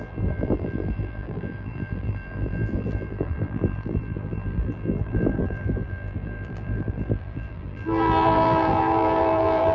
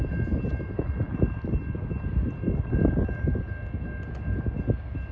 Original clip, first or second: second